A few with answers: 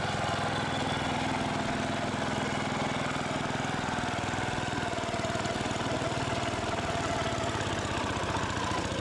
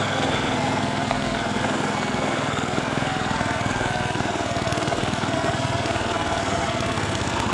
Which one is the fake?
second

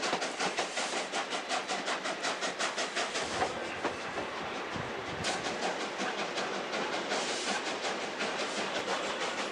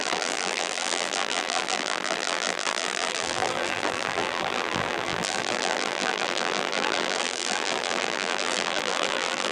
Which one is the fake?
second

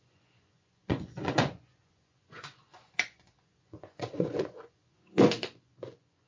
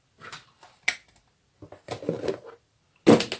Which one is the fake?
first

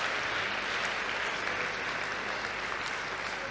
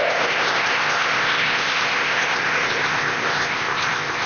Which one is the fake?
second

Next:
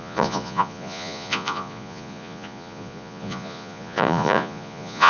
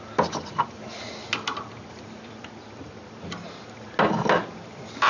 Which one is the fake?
first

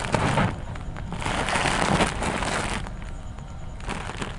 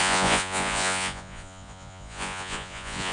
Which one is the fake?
second